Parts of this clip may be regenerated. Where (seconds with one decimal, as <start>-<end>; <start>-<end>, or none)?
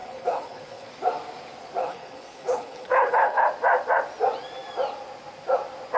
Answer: 0.0-0.9; 1.8-3.5